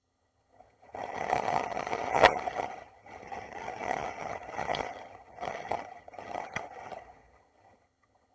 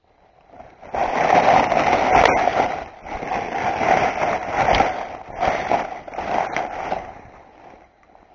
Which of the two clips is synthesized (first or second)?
first